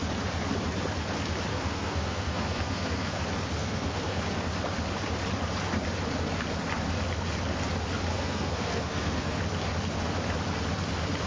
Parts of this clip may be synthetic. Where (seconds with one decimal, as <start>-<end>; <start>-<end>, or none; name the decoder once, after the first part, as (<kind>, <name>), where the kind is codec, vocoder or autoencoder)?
1.5-3.2 (codec, SNAC); 3.6-4.2; 8.1-9.4